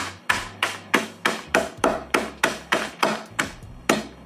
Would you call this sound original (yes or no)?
yes